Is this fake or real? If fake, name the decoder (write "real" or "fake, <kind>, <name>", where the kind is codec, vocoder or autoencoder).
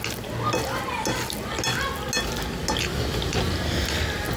real